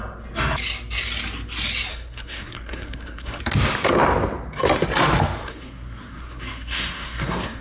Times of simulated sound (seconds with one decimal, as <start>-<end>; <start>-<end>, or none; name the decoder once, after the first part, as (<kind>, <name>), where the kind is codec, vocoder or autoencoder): 1.9-3.4 (codec, SNAC); 5.4-7.6